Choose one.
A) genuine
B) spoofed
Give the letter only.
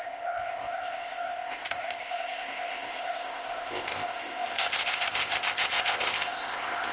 B